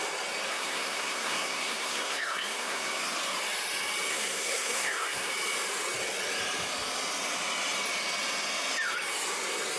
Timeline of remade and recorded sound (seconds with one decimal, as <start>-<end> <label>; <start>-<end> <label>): 0.0-0.5 recorded; 0.5-3.0 remade; 3.0-4.1 recorded; 4.1-5.3 remade; 5.3-9.8 recorded

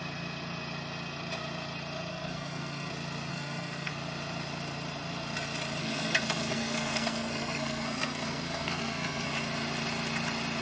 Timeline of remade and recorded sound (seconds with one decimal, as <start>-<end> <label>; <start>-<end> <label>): 0.0-2.1 recorded; 2.1-2.9 remade; 2.9-3.3 recorded; 3.3-3.9 remade; 3.9-5.8 recorded; 5.8-9.3 remade; 9.3-10.6 recorded